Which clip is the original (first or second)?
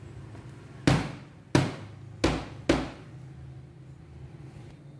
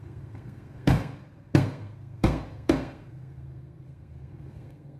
first